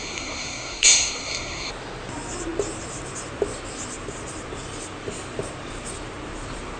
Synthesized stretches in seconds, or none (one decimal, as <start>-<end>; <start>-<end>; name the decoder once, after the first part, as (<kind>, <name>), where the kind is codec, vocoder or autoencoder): 0.0-1.7 (codec, SNAC)